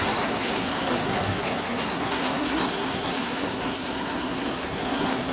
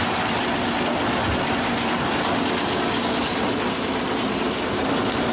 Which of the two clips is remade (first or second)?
first